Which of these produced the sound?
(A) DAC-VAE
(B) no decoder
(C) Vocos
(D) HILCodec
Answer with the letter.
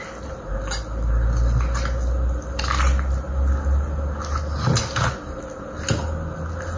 B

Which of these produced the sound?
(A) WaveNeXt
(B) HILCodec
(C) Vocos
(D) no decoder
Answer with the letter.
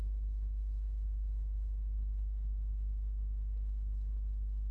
B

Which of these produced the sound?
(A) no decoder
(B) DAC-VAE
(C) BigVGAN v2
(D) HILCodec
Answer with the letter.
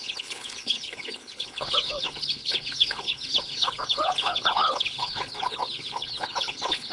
D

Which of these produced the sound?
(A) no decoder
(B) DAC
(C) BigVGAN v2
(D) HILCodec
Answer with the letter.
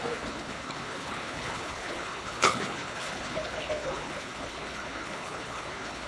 D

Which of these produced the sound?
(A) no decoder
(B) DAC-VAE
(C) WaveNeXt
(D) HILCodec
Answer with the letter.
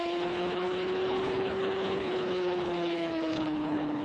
D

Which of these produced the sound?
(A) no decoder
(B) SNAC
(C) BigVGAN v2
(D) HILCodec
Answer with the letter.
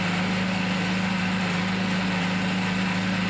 A